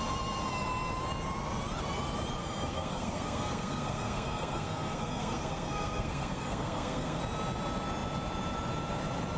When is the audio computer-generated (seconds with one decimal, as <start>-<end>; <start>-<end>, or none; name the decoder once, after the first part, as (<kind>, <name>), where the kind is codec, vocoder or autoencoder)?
2.4-7.2 (codec, SNAC)

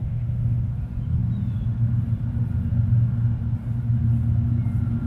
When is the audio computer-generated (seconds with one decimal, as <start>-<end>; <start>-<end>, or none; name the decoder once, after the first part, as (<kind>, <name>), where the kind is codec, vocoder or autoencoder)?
0.0-0.7 (autoencoder, DAC-VAE)